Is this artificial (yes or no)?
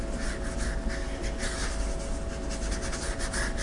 no